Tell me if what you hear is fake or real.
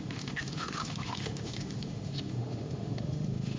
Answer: fake